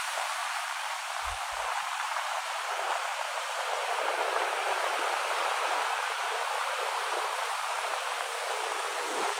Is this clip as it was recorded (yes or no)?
no